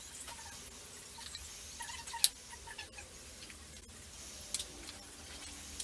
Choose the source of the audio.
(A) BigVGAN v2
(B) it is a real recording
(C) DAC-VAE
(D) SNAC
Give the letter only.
B